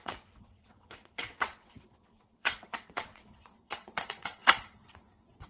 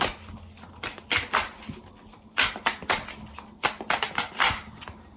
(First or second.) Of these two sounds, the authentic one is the second